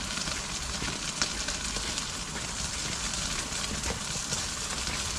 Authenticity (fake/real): real